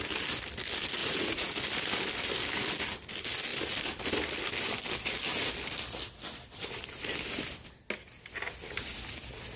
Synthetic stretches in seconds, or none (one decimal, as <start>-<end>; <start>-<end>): 1.0-1.6